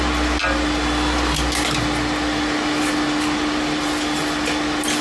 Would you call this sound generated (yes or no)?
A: no